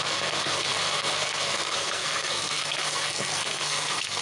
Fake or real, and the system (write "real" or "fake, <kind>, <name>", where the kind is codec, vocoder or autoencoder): fake, codec, SNAC